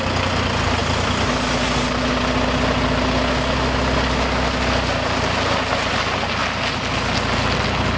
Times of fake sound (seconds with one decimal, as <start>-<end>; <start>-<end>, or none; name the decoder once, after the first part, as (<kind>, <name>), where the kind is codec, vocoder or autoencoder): none